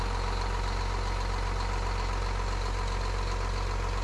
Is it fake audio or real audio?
real